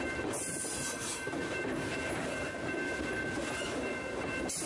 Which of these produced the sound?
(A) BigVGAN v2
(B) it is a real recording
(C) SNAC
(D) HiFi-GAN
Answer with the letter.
A